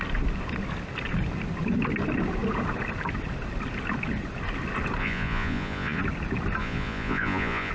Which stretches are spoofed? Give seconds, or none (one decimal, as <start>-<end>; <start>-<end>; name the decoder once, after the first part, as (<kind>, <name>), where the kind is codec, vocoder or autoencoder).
5.0-6.0 (vocoder, Vocos); 6.6-7.7